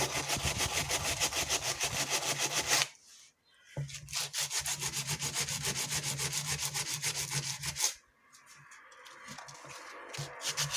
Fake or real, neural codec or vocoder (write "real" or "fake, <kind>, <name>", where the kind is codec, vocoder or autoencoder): real